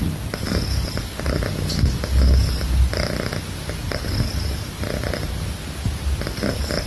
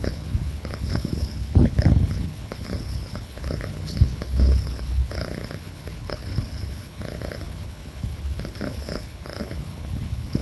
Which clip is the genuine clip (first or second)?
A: first